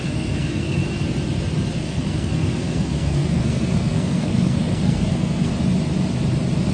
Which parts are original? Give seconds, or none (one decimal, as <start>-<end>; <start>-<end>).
0.8-1.7; 5.5-6.7